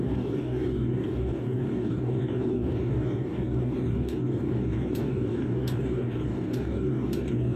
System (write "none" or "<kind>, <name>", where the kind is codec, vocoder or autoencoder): codec, DAC